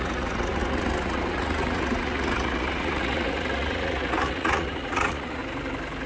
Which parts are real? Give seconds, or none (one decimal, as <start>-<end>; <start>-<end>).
5.4-6.1

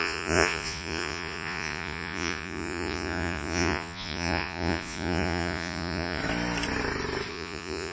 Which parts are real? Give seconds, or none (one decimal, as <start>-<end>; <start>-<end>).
6.2-7.3

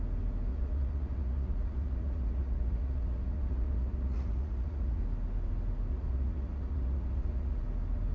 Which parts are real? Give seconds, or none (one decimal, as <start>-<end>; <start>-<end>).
0.0-0.5; 5.0-5.9; 7.6-8.1

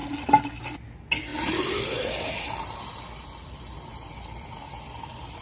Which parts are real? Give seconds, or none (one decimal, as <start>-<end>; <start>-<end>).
0.0-5.4